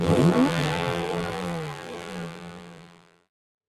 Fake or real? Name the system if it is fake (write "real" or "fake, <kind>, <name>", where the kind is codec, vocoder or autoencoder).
fake, vocoder, BigVGAN v2